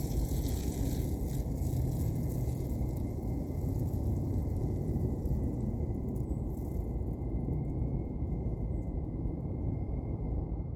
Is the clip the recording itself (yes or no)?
no